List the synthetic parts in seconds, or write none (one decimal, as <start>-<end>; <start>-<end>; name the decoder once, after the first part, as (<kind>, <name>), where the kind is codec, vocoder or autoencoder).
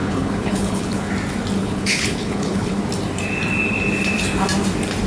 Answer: 0.0-1.1 (codec, HILCodec); 1.6-2.8